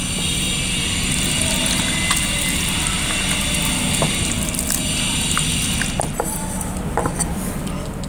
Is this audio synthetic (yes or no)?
no